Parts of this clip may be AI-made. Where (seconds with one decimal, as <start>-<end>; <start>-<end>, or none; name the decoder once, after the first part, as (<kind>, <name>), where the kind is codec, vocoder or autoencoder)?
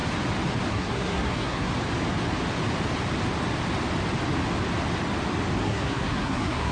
0.7-1.7 (codec, SNAC); 5.6-6.7